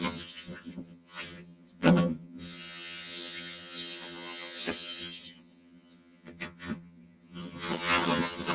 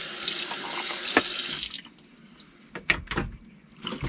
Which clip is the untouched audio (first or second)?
second